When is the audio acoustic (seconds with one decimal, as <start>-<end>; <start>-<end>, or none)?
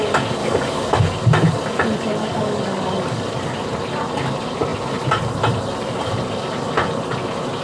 0.0-0.4; 1.0-2.2; 3.2-7.6